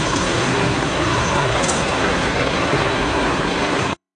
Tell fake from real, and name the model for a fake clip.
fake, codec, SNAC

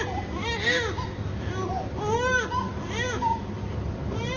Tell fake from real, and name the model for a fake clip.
real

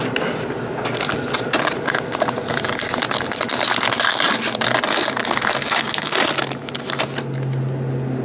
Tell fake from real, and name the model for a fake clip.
real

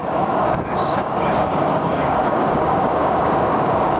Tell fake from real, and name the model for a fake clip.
fake, codec, DAC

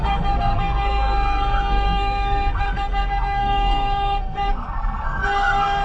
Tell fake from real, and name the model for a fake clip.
fake, codec, SNAC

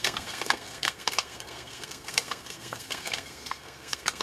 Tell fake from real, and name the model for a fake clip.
fake, codec, SNAC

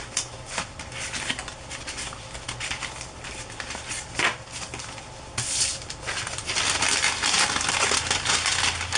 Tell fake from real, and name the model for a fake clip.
real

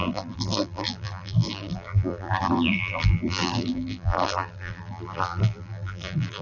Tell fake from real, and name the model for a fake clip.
fake, vocoder, BigVGAN v2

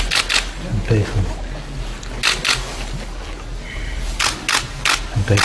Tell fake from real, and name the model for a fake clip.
real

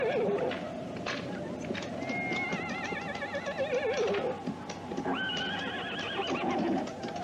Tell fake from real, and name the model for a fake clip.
real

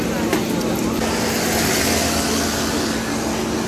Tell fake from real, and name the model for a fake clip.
real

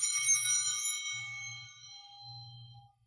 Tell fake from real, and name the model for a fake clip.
fake, autoencoder, DAC-VAE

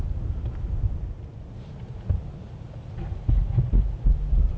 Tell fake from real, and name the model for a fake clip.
real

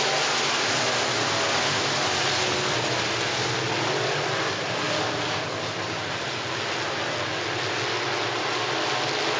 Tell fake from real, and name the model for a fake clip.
real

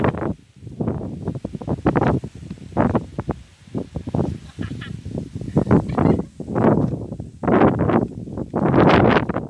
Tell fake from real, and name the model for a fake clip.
real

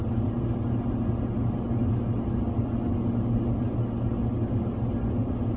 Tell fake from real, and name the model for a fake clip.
real